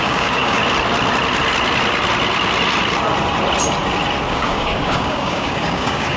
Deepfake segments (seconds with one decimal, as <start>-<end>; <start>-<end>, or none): 0.0-0.6; 4.3-6.2